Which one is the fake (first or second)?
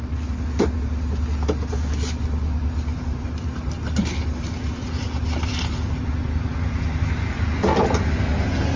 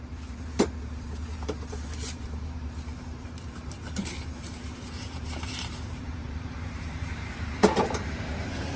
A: second